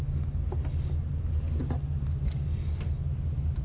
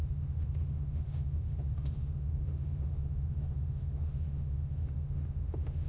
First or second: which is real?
first